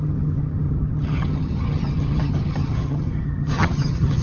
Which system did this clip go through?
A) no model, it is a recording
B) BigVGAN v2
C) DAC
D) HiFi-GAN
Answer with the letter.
D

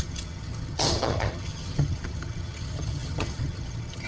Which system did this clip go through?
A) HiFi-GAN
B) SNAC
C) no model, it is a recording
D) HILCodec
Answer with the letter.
A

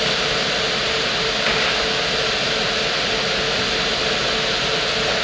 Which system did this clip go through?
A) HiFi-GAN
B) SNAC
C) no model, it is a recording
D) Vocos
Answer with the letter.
C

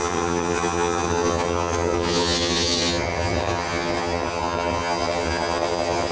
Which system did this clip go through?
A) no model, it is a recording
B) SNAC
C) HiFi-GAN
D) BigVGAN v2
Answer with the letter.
C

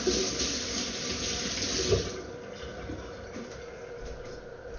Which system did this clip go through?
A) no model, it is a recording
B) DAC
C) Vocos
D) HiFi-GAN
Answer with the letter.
A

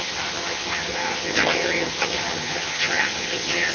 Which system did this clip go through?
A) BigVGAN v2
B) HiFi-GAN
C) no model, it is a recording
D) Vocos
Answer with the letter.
B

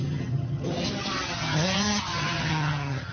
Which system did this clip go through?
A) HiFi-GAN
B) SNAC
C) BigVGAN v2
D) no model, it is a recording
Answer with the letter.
A